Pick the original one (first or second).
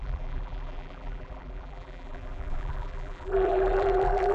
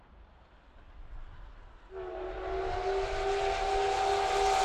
second